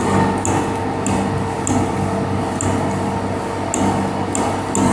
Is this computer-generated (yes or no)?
no